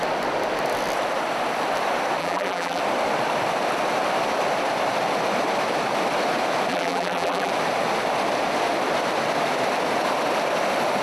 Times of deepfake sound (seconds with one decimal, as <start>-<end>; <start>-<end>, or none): 2.2-2.8; 6.7-7.5